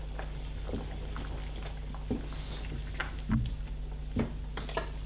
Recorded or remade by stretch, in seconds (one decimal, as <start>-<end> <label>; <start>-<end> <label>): 0.0-5.1 recorded